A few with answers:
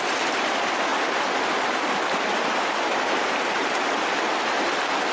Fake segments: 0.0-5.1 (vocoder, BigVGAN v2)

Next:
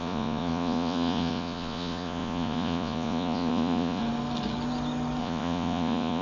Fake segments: 0.0-4.0 (vocoder, Vocos); 5.2-6.2